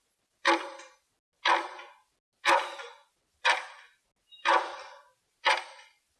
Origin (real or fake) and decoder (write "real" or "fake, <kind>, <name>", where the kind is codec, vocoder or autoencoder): real